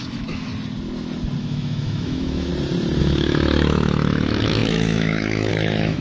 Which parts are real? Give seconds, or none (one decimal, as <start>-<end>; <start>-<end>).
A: 0.5-1.4; 2.5-3.0